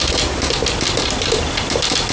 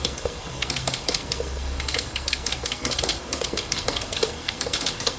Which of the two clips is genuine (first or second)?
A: first